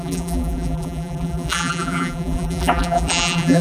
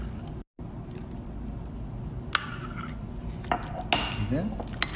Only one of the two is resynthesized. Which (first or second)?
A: first